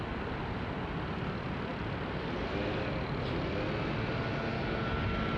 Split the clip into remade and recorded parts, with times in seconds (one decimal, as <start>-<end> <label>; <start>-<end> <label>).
0.0-5.4 recorded